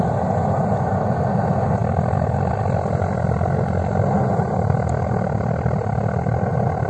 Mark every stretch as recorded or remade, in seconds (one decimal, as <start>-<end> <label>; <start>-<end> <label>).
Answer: 0.0-6.9 recorded